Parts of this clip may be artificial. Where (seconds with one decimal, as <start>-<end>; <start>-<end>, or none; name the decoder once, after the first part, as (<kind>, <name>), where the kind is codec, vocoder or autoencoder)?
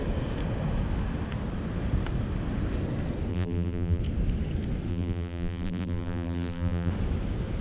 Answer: 3.3-4.0 (vocoder, BigVGAN v2); 4.9-6.9